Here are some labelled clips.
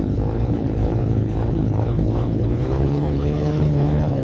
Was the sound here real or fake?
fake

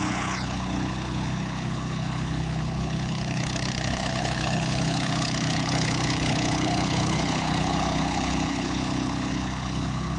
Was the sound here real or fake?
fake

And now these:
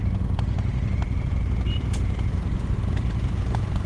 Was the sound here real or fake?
real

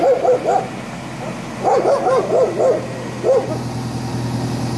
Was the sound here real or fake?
real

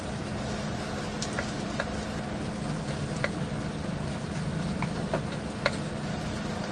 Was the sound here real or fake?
real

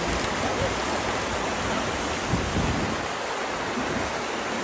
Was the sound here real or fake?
real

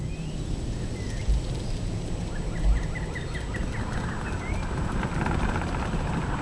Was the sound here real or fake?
real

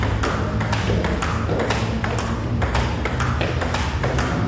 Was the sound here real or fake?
real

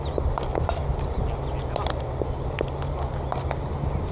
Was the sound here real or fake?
real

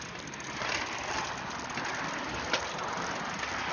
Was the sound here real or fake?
real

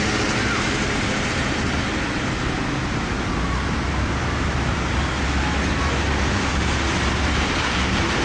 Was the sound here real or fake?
real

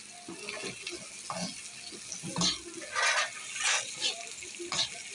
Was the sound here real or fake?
real